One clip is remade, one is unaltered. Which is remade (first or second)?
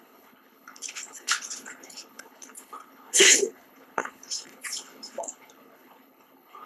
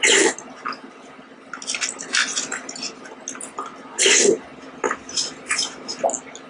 first